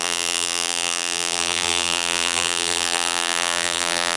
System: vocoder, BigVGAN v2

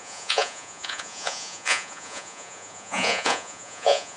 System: vocoder, Vocos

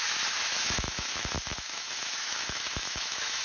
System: autoencoder, DAC-VAE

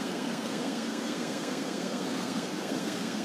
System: codec, SNAC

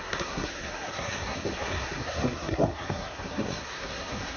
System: codec, SNAC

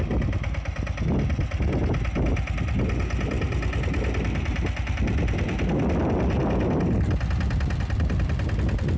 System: none